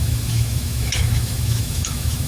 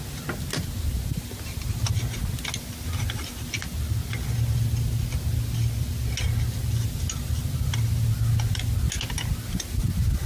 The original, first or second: second